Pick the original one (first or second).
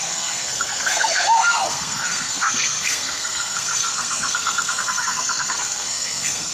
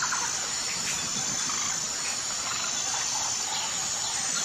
second